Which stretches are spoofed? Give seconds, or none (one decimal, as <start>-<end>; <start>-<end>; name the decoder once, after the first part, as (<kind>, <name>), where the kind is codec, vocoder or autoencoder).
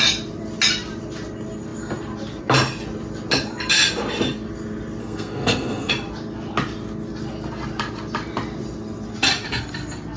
5.0-5.9 (codec, SNAC)